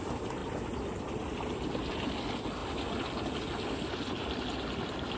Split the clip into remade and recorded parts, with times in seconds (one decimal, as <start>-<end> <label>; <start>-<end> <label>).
0.0-5.2 recorded